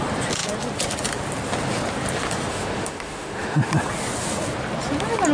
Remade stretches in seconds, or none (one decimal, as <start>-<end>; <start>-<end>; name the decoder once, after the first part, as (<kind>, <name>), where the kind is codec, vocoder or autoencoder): 2.5-3.7 (autoencoder, DAC-VAE)